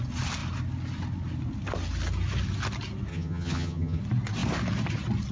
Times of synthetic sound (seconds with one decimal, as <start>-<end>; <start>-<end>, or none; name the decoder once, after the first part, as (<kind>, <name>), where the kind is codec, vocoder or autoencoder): 3.1-4.0 (vocoder, HiFi-GAN)